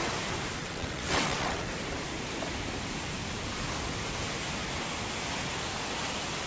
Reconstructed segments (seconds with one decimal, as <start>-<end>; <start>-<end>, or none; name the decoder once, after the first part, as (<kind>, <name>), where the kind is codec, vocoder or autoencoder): 0.6-1.7 (vocoder, WaveNeXt)